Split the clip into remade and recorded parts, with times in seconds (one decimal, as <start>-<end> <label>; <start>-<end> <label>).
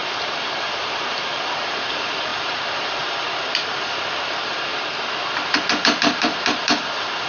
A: 0.0-4.7 remade; 4.7-5.8 recorded; 5.8-7.3 remade